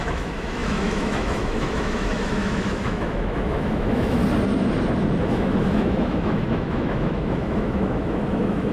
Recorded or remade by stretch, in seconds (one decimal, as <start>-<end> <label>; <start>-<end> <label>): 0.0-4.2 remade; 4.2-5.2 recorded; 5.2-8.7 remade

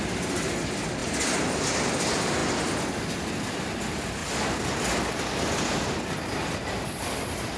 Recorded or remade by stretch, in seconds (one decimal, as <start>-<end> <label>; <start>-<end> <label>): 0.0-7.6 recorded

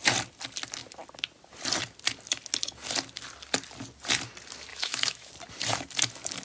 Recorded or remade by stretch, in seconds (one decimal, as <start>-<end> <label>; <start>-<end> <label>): 0.0-4.7 recorded; 4.7-5.3 remade; 5.3-6.4 recorded

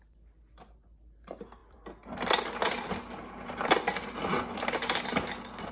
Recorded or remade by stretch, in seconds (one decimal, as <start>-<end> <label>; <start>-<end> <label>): 0.0-5.7 recorded

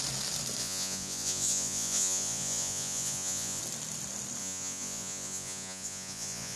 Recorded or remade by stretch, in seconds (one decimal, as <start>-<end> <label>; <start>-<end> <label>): 0.0-0.6 recorded; 0.6-3.6 remade; 3.6-4.4 recorded; 4.4-6.6 remade